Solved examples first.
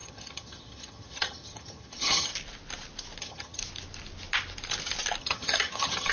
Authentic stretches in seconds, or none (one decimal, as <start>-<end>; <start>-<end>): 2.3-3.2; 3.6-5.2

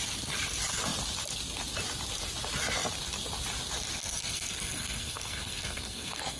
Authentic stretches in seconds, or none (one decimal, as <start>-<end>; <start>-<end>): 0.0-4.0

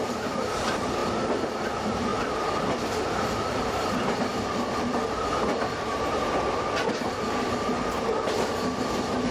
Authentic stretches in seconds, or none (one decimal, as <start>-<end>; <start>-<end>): 0.0-9.3

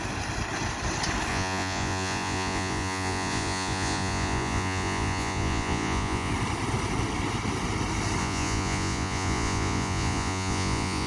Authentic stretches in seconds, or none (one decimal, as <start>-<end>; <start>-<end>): 0.0-1.3; 6.3-8.2

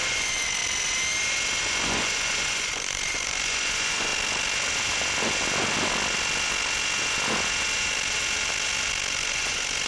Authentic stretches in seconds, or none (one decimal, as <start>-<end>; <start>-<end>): 0.6-1.6; 4.1-9.1

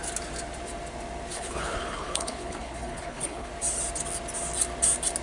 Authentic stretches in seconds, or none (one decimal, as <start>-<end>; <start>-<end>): 0.0-1.3; 3.5-5.2

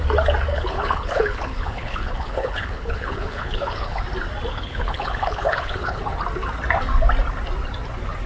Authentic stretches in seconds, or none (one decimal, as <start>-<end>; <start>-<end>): 0.0-0.5; 4.0-4.5; 6.0-8.3